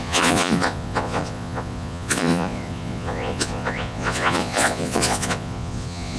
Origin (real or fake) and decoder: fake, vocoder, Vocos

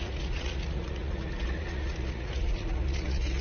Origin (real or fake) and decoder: fake, vocoder, Vocos